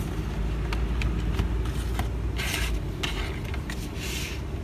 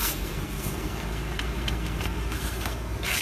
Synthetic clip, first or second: second